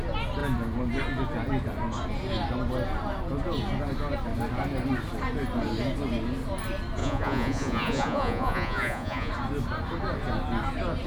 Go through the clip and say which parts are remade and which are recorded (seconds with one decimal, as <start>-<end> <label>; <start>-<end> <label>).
0.0-7.0 recorded; 7.0-9.3 remade; 9.3-11.1 recorded